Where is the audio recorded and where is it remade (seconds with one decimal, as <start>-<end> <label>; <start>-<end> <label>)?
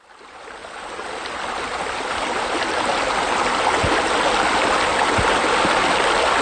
0.0-6.4 recorded